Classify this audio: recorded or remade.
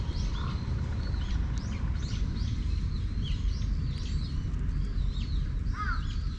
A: recorded